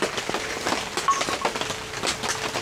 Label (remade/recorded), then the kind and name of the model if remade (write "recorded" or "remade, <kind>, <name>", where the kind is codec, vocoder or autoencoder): recorded